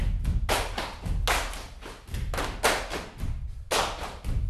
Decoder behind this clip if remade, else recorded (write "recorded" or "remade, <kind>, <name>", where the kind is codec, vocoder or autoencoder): recorded